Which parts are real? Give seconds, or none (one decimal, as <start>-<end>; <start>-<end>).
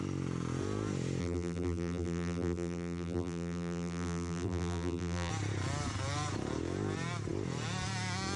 0.0-1.2; 5.3-8.4